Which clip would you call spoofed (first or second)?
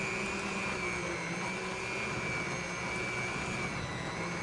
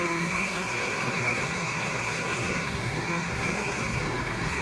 second